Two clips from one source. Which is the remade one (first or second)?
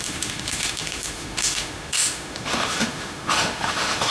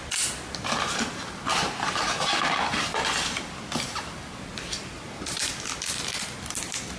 first